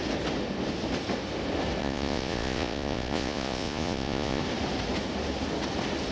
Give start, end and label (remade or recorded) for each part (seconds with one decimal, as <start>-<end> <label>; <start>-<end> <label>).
0.0-1.8 recorded; 1.8-4.4 remade; 4.4-6.1 recorded